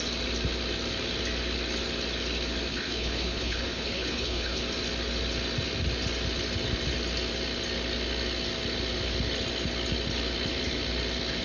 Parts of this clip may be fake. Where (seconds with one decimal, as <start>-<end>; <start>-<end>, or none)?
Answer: 2.7-4.6